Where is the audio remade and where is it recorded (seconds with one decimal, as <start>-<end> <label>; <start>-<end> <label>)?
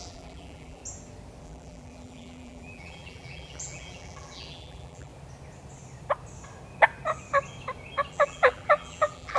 0.0-0.8 remade; 0.8-1.4 recorded; 1.4-5.1 remade; 5.1-8.1 recorded; 8.1-9.4 remade